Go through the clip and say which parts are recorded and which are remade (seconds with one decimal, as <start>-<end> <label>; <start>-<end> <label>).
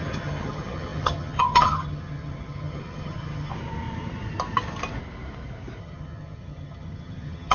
0.0-3.5 remade; 3.5-5.8 recorded; 5.8-7.5 remade